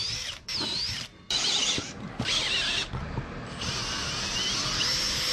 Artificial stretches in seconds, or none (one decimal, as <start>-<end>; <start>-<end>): 0.0-1.6; 4.8-5.3